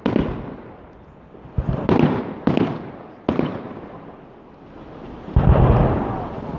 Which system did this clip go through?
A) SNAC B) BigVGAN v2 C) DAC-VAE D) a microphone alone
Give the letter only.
D